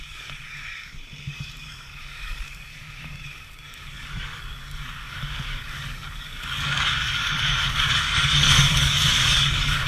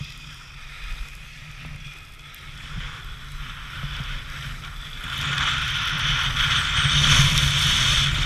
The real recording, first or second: second